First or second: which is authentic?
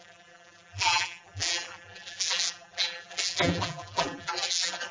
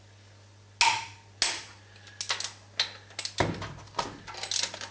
second